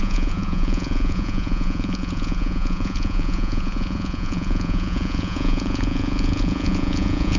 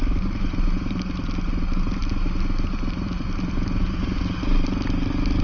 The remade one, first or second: first